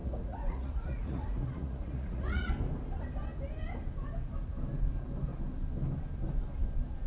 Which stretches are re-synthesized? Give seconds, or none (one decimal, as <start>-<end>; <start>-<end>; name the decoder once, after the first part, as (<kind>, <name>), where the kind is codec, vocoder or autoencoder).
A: 0.0-2.5 (vocoder, Vocos)